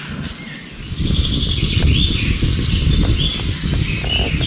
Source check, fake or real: real